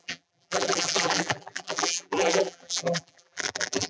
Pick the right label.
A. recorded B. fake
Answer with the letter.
B